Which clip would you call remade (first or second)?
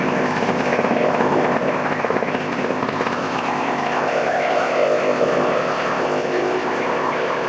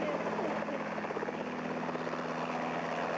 first